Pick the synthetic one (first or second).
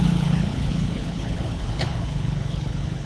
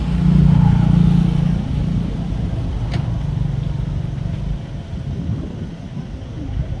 first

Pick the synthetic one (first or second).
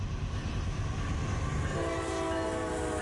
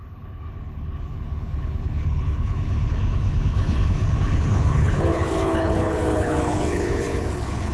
second